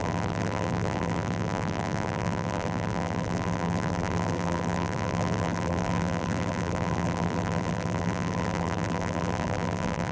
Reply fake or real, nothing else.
fake